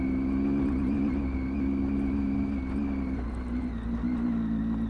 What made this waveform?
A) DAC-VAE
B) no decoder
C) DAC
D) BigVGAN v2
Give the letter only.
B